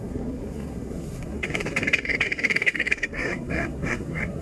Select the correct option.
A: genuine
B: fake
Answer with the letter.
B